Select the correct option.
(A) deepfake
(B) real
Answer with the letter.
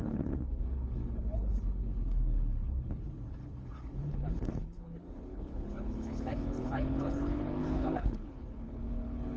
A